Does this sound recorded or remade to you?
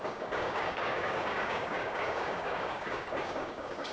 remade